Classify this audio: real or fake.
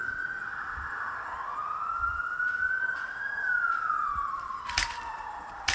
real